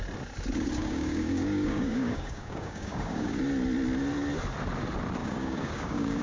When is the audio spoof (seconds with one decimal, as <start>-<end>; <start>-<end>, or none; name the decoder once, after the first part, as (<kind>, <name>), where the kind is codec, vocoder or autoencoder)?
0.8-3.4 (codec, DAC); 5.2-6.2